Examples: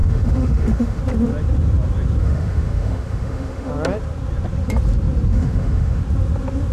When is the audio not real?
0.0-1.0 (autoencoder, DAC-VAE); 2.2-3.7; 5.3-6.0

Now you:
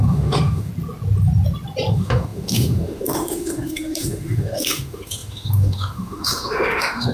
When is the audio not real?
0.0-0.7 (autoencoder, DAC-VAE); 1.9-7.1

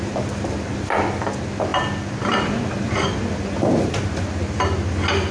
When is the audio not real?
none

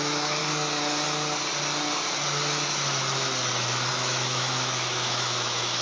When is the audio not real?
0.0-0.4 (autoencoder, DAC-VAE); 3.9-5.8

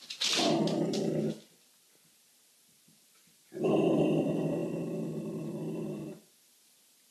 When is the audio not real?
none

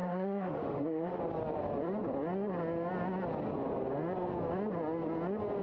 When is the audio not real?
0.0-1.2 (autoencoder, DAC-VAE)

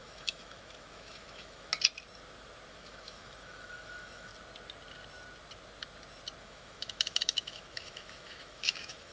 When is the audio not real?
0.0-1.7 (autoencoder, DAC-VAE); 2.7-4.3; 6.4-9.1